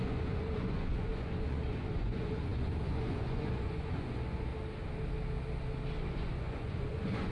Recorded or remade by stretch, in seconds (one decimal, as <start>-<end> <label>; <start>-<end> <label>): 0.0-4.5 remade; 4.5-6.1 recorded; 6.1-7.3 remade

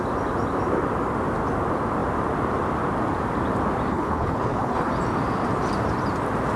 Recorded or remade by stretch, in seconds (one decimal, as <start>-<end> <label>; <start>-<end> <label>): 0.0-3.9 recorded; 3.9-4.9 remade; 4.9-6.6 recorded

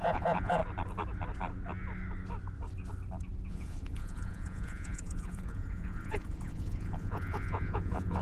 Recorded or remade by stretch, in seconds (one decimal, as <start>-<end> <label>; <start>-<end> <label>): 0.0-0.6 remade; 0.6-3.5 recorded; 3.5-8.2 remade